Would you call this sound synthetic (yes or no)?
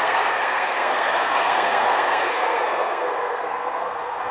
yes